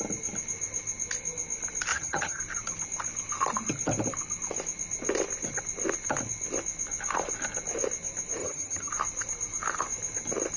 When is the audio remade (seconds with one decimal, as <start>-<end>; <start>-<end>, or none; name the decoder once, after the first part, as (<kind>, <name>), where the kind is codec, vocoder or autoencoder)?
1.9-2.4 (vocoder, HiFi-GAN); 8.4-8.9